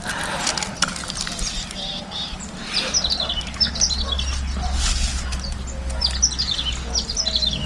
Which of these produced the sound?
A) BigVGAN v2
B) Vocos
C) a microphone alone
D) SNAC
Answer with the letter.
C